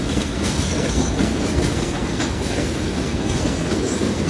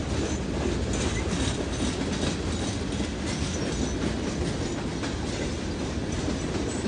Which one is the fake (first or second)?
first